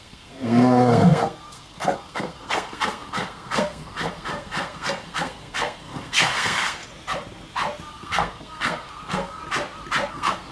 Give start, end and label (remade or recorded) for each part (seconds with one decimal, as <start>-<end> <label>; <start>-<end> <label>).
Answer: 0.0-6.8 remade; 6.8-7.9 recorded; 7.9-9.4 remade; 9.4-10.1 recorded; 10.1-10.5 remade